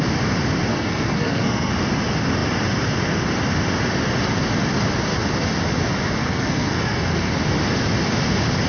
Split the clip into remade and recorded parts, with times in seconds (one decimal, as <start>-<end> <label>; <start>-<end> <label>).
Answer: 0.0-0.7 recorded; 0.7-1.7 remade; 1.7-6.2 recorded; 6.2-7.3 remade; 7.3-8.7 recorded